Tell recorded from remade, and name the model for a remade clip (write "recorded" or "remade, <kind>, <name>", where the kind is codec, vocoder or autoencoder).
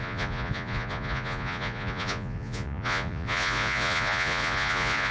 remade, vocoder, Vocos